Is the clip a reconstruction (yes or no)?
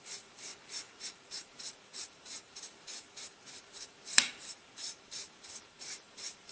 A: yes